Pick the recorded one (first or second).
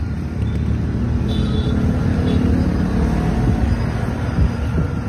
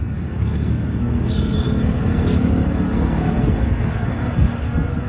first